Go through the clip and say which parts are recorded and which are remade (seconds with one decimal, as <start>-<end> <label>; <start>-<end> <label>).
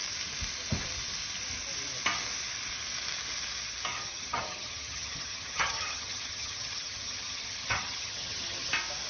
0.0-3.9 recorded; 3.9-8.7 remade; 8.7-9.1 recorded